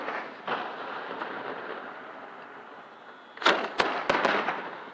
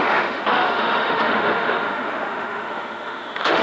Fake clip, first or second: second